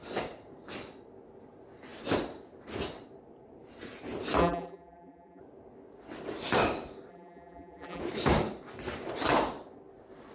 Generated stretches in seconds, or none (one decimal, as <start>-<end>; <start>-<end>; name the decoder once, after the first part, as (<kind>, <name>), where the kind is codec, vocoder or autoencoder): 4.4-5.4 (vocoder, BigVGAN v2); 7.1-8.0